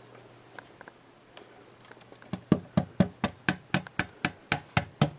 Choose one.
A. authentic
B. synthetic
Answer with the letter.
A